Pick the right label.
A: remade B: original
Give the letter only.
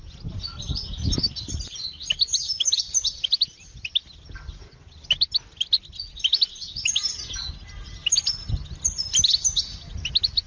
B